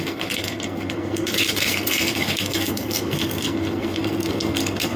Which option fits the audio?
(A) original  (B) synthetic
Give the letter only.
B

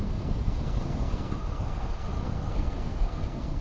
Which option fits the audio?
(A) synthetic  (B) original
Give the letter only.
A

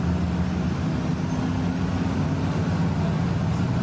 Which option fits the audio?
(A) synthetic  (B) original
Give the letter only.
B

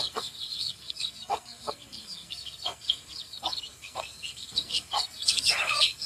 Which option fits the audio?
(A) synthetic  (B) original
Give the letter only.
A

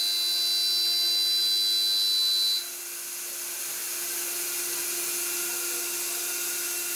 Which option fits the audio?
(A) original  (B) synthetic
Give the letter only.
A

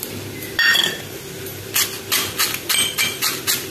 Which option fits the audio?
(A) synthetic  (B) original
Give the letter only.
B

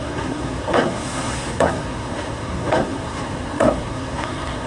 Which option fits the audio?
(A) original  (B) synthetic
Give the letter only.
B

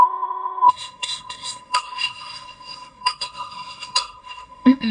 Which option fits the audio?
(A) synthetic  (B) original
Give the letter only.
A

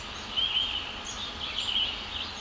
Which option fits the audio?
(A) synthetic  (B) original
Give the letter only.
B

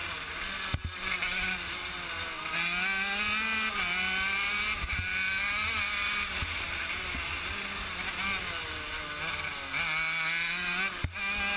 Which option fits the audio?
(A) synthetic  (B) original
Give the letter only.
B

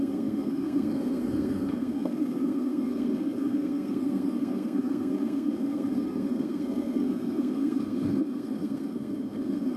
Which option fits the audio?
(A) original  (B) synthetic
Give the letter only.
B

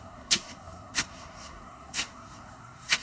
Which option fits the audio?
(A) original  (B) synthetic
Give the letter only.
B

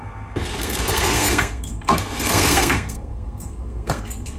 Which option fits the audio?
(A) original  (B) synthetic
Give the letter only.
B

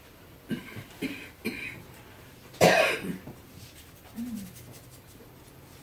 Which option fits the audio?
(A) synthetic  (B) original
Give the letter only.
B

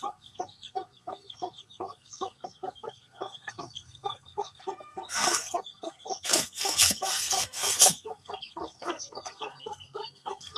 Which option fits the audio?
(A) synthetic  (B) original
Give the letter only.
A